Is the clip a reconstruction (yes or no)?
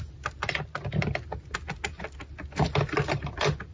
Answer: no